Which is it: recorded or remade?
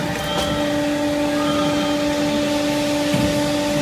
recorded